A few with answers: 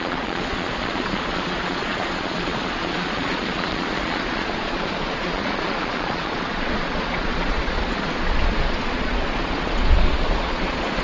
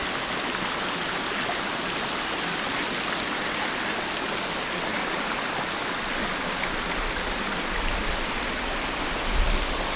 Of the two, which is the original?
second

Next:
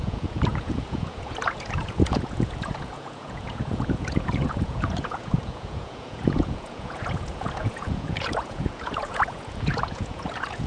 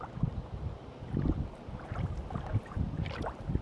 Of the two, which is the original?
second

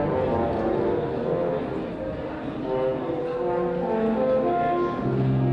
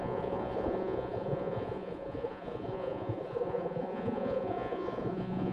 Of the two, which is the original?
first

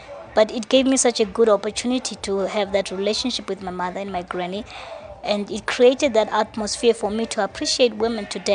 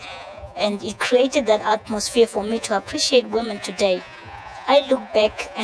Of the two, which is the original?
first